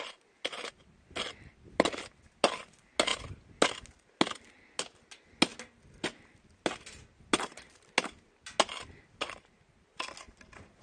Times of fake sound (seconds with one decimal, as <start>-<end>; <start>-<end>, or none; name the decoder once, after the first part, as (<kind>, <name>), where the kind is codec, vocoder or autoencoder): none